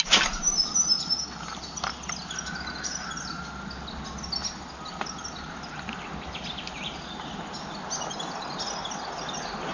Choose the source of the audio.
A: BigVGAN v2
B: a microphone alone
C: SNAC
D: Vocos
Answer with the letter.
B